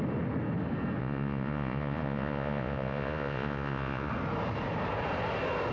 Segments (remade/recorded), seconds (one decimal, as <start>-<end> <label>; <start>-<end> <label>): 0.0-1.0 recorded; 1.0-4.1 remade; 4.1-5.7 recorded